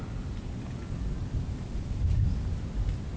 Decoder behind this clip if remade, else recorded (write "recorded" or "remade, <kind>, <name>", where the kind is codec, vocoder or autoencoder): recorded